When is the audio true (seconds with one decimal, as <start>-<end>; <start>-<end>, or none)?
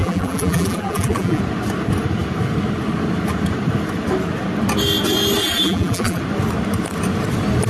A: 1.4-5.4; 6.2-7.7